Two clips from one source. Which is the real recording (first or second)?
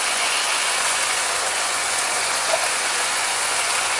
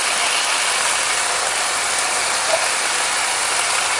second